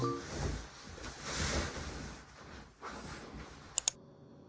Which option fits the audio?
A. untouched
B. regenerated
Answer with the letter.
A